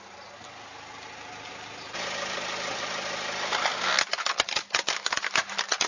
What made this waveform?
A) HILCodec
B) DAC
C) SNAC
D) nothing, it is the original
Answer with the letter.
D